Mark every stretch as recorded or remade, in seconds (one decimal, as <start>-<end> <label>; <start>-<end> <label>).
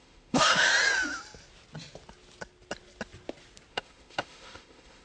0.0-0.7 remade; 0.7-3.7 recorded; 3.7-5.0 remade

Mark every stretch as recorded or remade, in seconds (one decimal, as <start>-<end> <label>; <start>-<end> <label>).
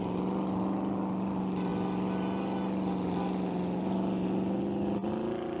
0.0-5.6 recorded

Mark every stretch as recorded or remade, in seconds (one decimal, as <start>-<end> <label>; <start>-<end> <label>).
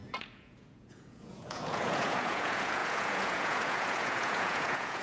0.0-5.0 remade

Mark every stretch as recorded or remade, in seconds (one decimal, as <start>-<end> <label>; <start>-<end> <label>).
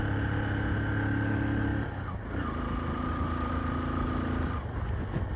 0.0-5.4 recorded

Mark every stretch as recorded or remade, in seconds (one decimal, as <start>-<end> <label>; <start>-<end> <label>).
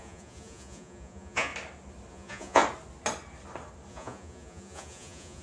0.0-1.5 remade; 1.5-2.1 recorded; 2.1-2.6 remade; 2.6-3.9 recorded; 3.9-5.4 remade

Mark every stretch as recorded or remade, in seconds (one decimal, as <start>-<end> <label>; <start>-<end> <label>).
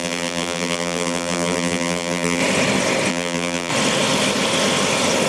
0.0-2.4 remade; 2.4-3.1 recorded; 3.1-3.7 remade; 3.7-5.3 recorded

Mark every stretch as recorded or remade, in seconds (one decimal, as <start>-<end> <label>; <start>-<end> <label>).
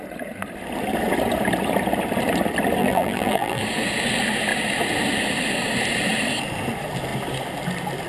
0.0-2.8 recorded; 2.8-3.6 remade; 3.6-8.1 recorded